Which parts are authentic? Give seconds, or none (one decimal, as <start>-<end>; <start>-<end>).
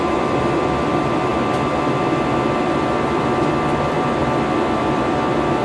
1.3-2.6; 4.2-4.8